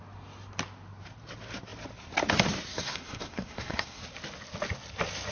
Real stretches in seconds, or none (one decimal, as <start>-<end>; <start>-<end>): 0.0-2.7; 4.0-5.3